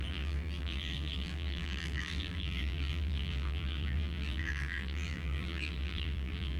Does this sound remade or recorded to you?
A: remade